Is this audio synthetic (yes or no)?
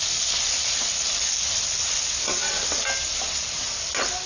no